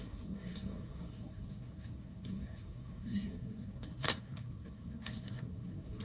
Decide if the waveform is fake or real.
fake